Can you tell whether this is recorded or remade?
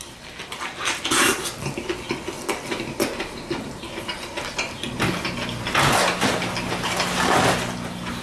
recorded